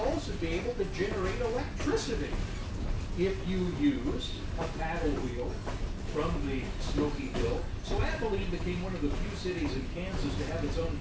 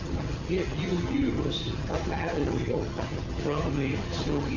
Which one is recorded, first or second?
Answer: first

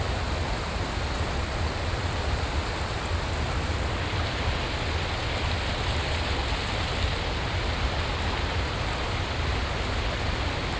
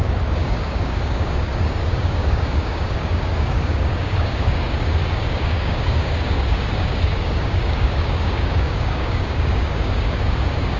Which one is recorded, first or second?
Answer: first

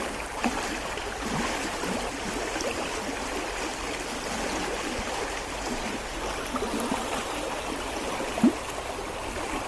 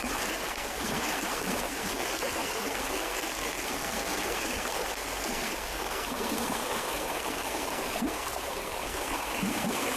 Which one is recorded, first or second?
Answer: first